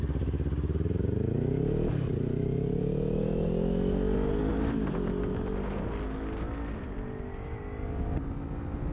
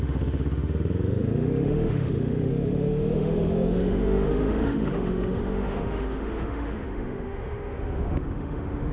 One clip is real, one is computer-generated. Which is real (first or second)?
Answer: first